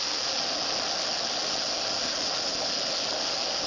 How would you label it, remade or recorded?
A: recorded